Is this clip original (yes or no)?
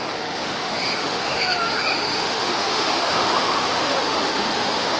no